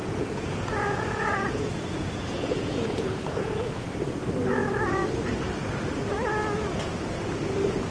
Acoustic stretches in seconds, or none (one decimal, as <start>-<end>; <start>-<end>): 3.8-7.9

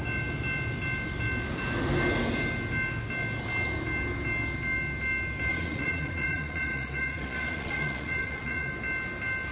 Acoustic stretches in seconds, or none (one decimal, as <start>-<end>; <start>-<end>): 0.0-5.5; 8.7-9.5

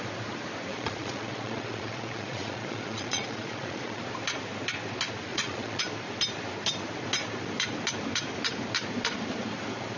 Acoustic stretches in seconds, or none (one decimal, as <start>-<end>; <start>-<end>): 0.0-0.7; 4.0-5.3; 5.8-10.0